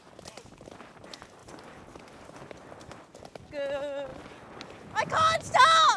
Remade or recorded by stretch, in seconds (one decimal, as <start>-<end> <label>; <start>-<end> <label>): 0.0-6.0 recorded